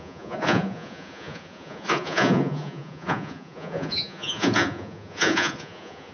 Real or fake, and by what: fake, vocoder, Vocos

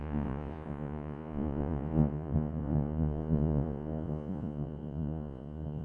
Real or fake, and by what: fake, vocoder, Vocos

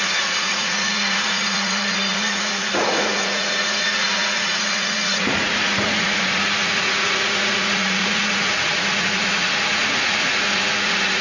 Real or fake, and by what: fake, vocoder, Vocos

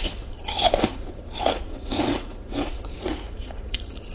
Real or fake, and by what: fake, vocoder, Vocos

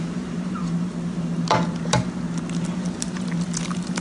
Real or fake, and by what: real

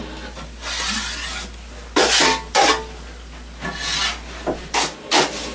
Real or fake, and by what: real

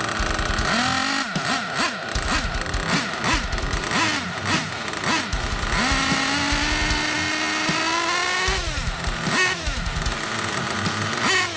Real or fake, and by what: real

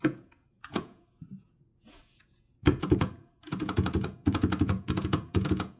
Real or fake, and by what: fake, vocoder, Vocos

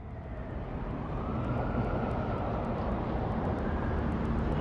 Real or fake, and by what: real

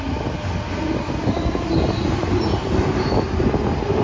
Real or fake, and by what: real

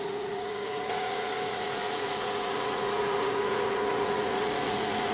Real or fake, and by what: fake, vocoder, Vocos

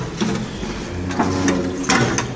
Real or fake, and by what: real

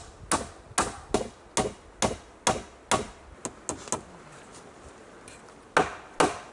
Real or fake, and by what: real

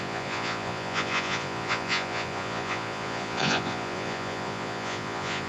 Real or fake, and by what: fake, vocoder, Vocos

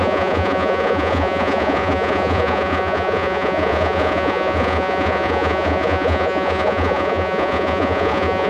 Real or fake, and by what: fake, vocoder, Vocos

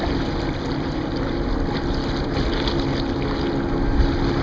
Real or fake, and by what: real